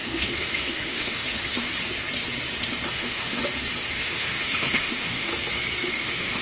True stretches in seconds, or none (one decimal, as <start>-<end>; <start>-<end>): 1.7-2.9; 3.4-3.9; 5.3-5.9